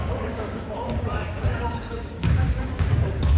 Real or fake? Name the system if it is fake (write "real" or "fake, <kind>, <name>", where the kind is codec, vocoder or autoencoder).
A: fake, codec, DAC